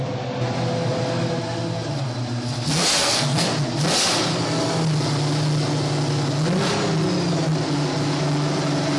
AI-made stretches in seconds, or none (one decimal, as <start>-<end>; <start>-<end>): 3.0-3.5